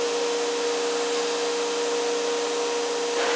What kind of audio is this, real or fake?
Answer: real